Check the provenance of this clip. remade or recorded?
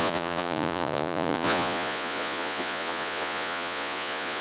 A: remade